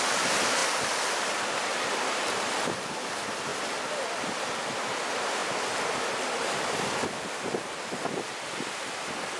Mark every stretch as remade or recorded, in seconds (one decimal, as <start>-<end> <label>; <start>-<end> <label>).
0.0-9.4 recorded